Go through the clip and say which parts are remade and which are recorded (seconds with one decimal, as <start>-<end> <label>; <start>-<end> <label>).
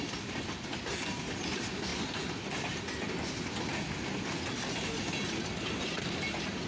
0.0-6.7 recorded